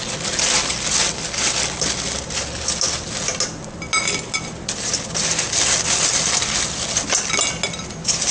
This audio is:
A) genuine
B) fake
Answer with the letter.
A